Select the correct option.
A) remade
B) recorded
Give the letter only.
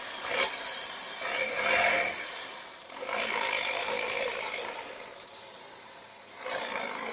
A